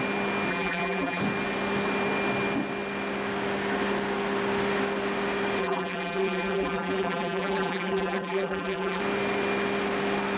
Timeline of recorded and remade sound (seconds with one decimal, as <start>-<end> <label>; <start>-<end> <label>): 0.0-0.5 recorded; 0.5-1.2 remade; 1.2-5.6 recorded; 5.6-9.0 remade; 9.0-10.4 recorded